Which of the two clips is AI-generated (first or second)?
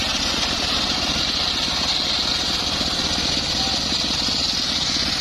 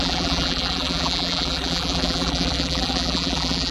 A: second